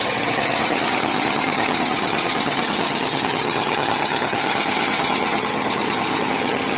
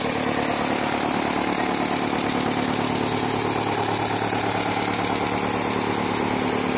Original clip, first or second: second